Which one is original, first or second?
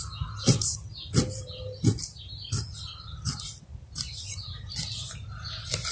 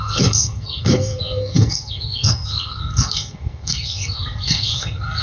first